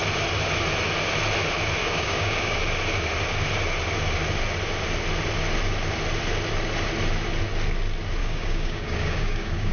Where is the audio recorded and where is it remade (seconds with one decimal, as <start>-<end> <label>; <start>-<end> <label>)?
0.0-1.8 recorded; 1.8-2.6 remade; 2.6-8.2 recorded; 8.2-9.7 remade